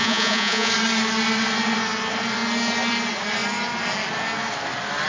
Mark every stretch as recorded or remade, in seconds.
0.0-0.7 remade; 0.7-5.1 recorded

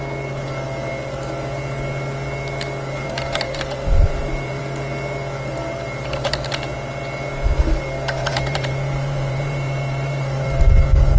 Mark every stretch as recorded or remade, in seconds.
0.0-3.0 recorded; 3.0-4.6 remade; 4.6-8.2 recorded; 8.2-10.6 remade; 10.6-11.2 recorded

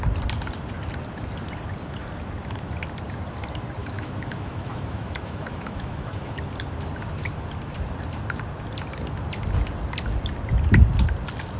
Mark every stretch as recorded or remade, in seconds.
0.0-3.8 recorded; 3.8-6.4 remade; 6.4-11.6 recorded

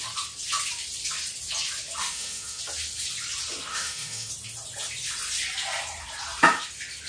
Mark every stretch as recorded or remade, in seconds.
0.0-2.0 recorded; 2.0-2.6 remade; 2.6-3.7 recorded; 3.7-4.3 remade; 4.3-7.1 recorded

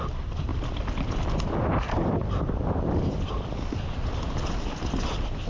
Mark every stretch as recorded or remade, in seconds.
0.0-0.5 recorded; 0.5-3.3 remade; 3.3-5.5 recorded

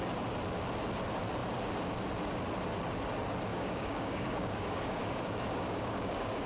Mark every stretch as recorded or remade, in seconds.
0.0-3.5 recorded; 3.5-6.5 remade